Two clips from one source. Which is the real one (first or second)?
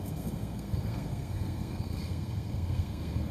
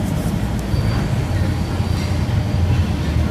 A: second